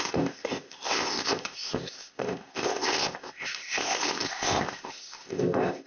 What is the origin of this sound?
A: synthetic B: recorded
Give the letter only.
A